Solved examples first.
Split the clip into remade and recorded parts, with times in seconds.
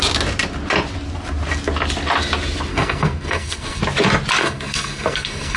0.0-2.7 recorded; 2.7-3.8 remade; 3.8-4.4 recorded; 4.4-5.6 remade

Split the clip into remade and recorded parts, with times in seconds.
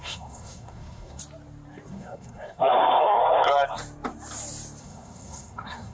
0.0-1.2 remade; 1.2-1.9 recorded; 1.9-3.2 remade; 3.2-4.8 recorded; 4.8-5.9 remade